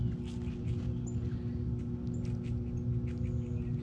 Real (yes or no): yes